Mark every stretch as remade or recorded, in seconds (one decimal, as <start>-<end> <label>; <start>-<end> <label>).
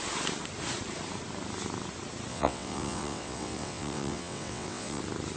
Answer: 0.0-2.3 recorded; 2.3-5.0 remade; 5.0-5.4 recorded